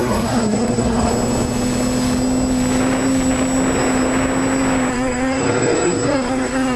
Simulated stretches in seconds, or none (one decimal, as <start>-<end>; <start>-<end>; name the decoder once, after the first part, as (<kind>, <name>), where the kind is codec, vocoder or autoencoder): 0.0-1.1 (codec, SNAC); 4.9-6.8

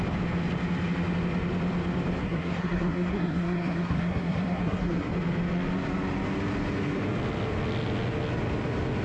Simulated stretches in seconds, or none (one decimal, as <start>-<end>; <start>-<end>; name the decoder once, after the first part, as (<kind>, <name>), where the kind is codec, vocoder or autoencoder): 2.2-5.1 (codec, SNAC)

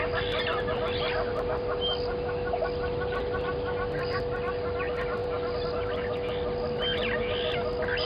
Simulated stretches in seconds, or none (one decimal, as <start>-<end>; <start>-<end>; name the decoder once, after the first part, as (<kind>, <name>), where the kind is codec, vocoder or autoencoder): none

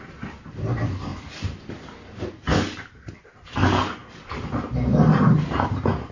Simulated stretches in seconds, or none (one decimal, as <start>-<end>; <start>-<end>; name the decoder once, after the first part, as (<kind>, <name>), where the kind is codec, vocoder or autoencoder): none

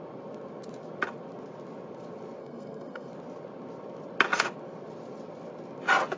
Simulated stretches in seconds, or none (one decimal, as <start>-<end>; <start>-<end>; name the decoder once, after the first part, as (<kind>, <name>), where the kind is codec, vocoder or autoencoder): 2.4-3.1 (codec, SNAC)

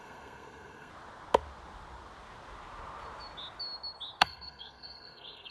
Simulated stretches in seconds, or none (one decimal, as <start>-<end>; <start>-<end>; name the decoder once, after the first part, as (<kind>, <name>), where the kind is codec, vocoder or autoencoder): 0.0-0.9 (codec, SNAC); 4.2-5.5

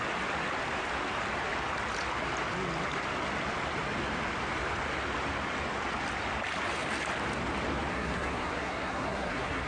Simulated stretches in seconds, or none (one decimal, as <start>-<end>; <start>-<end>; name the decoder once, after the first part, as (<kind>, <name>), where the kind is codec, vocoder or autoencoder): 7.9-9.7 (codec, SNAC)

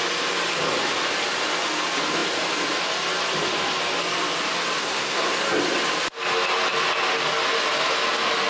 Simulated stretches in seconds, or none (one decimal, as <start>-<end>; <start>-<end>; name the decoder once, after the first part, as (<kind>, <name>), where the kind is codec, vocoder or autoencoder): 4.8-5.4 (codec, SNAC)